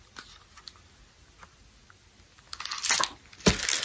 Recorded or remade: recorded